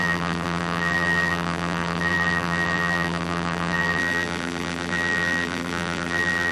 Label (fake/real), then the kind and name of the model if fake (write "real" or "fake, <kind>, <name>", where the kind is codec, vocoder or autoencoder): fake, vocoder, BigVGAN v2